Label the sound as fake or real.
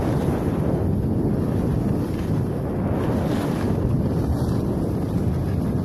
real